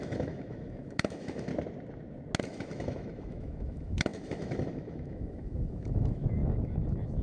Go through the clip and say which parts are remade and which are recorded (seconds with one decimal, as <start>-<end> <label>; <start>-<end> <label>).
0.0-1.5 remade; 1.5-2.4 recorded; 2.4-7.2 remade